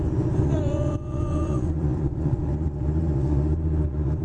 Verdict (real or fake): fake